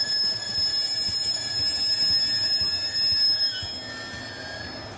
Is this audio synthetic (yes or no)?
no